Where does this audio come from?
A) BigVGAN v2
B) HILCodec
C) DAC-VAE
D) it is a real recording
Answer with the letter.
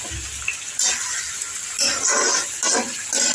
D